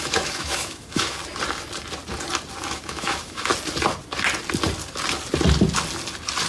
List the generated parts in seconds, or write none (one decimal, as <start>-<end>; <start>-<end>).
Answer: 0.0-1.2; 2.6-3.5